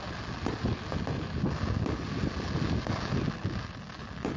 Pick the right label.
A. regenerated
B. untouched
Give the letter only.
B